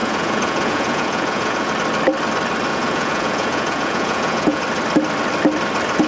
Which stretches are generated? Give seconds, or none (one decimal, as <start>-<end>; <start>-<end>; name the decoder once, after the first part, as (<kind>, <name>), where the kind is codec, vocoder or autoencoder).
0.0-1.7 (vocoder, Vocos); 2.7-4.6